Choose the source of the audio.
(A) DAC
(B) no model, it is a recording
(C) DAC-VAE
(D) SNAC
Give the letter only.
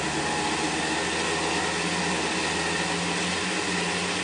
B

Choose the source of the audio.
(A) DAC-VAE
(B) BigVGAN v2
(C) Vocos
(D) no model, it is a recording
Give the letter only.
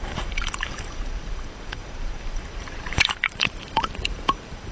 B